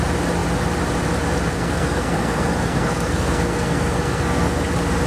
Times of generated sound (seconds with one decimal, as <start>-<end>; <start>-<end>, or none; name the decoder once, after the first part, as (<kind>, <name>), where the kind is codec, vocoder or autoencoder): 1.5-4.6 (codec, SNAC)